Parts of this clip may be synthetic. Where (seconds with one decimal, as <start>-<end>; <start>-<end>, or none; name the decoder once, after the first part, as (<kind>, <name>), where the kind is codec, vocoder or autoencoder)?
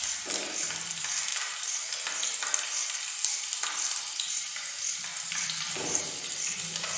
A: 1.3-2.1 (vocoder, BigVGAN v2); 2.8-3.5; 5.1-6.0